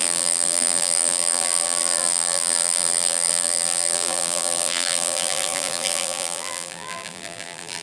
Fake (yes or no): yes